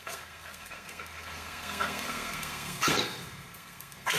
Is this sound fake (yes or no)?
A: yes